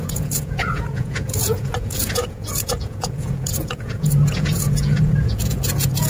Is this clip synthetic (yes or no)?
yes